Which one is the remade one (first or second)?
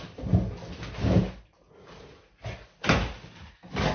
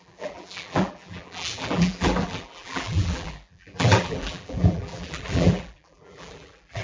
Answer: second